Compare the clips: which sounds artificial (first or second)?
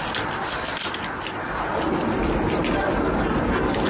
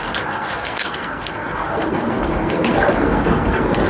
second